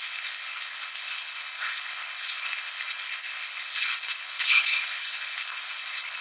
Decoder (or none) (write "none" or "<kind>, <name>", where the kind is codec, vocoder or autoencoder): codec, HILCodec